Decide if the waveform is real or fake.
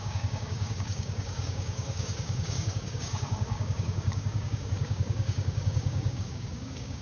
fake